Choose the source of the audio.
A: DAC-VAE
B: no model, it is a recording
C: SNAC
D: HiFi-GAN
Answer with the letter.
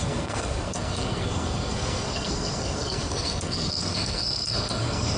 C